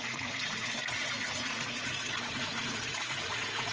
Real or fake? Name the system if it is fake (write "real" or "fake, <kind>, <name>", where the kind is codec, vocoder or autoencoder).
fake, vocoder, Vocos